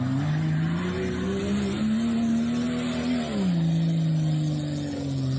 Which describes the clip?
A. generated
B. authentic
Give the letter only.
B